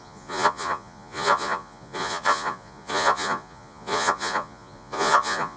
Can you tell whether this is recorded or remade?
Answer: remade